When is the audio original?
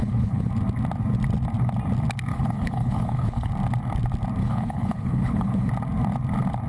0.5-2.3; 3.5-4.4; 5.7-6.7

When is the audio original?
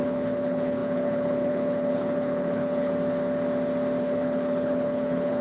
2.9-4.0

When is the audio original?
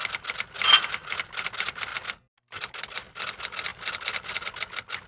0.0-5.1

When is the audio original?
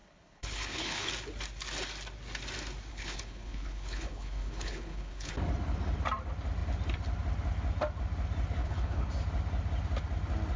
1.1-2.9; 5.3-8.6; 9.1-10.6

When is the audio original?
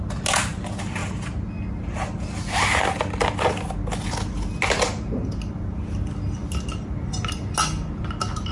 0.0-8.5